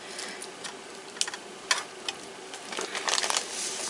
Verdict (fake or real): real